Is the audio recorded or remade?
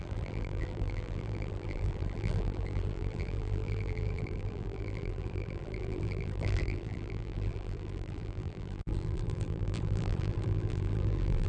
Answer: remade